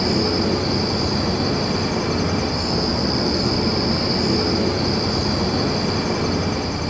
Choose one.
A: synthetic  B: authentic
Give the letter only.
B